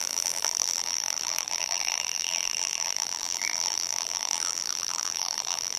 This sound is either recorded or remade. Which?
remade